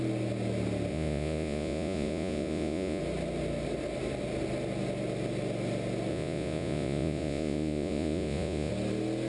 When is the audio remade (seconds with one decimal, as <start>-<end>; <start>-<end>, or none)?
0.9-3.0; 6.1-8.7